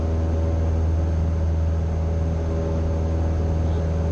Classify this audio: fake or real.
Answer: real